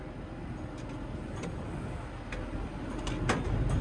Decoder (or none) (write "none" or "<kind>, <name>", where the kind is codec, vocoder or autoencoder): none